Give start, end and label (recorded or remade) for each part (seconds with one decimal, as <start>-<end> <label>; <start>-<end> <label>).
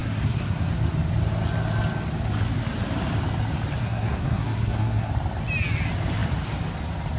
0.0-0.7 remade; 0.7-3.8 recorded; 3.8-5.1 remade; 5.1-7.2 recorded